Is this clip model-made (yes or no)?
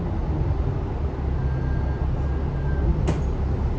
no